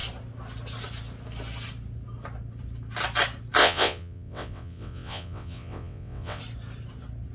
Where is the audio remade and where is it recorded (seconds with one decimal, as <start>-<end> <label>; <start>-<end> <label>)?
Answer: 0.0-3.6 recorded; 3.6-6.4 remade; 6.4-7.3 recorded